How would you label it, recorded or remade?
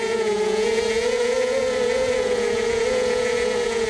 remade